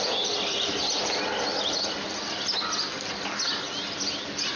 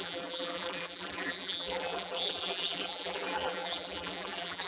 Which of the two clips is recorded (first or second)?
first